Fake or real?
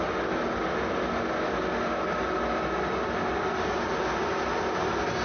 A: real